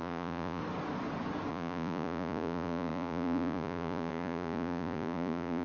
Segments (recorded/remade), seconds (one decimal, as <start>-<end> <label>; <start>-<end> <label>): 0.0-0.6 remade; 0.6-1.5 recorded; 1.5-5.6 remade

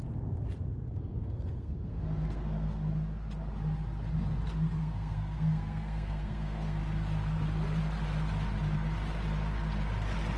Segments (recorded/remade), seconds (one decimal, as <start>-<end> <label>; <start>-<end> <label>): 0.0-0.8 recorded; 0.8-2.9 remade; 2.9-4.8 recorded; 4.8-6.8 remade; 6.8-10.4 recorded

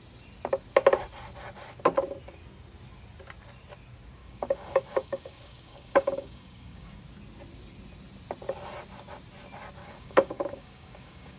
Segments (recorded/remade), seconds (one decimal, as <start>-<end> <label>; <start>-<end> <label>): 0.0-4.2 recorded; 4.2-7.0 remade; 7.0-9.8 recorded; 9.8-11.4 remade